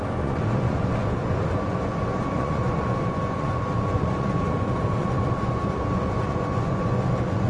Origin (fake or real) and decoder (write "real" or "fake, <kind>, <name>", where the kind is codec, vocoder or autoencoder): fake, vocoder, Vocos